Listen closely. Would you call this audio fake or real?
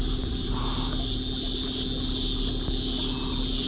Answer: real